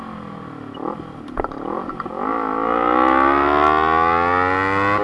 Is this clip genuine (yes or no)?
yes